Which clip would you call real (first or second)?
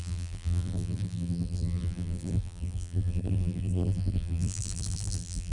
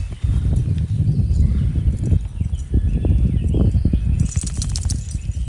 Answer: second